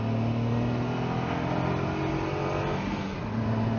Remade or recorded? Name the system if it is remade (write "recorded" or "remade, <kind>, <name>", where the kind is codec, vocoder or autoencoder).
recorded